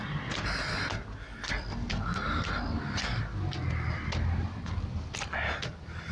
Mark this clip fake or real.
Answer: real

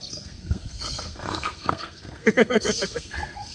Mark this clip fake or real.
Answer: fake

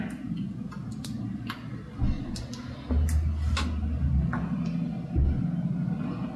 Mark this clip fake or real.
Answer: real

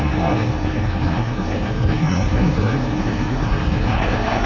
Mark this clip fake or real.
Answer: fake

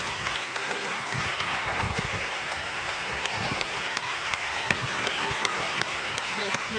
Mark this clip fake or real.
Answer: fake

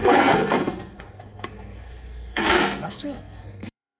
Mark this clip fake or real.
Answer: fake